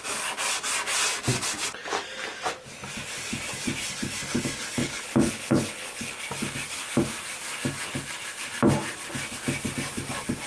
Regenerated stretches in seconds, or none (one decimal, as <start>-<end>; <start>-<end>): 4.8-6.2